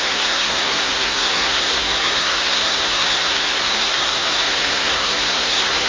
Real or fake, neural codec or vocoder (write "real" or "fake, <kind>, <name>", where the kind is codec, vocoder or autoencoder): fake, codec, SNAC